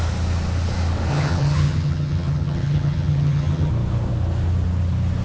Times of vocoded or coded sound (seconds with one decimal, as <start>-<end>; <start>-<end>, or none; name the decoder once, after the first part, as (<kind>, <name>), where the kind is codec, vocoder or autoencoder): 1.1-3.7 (vocoder, HiFi-GAN)